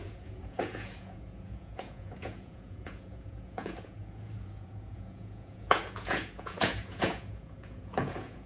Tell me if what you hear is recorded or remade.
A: remade